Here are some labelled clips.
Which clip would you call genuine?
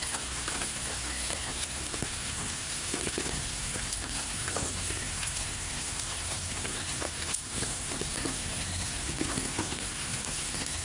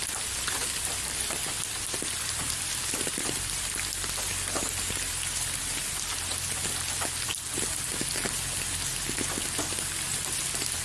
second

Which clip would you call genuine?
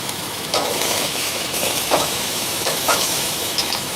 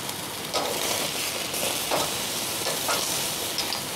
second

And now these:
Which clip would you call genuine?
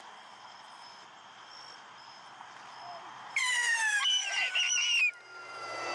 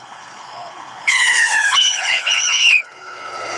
first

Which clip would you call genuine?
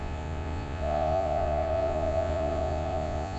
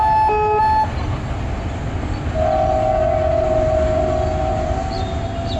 second